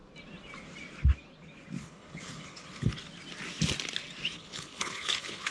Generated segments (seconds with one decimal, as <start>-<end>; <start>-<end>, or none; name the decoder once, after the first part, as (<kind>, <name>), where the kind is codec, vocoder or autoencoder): 1.8-3.0 (codec, HILCodec); 4.3-5.5